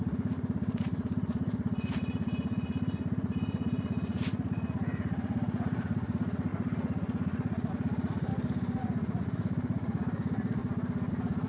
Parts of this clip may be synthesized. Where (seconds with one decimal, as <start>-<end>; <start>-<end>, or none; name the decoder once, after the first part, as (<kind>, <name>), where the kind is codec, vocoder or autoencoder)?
0.0-8.3 (vocoder, Vocos); 8.8-10.6; 11.1-11.5